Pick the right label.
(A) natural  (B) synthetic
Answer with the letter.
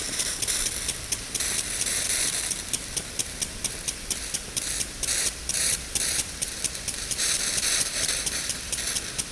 B